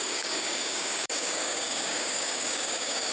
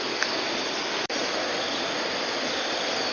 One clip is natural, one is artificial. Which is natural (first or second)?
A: second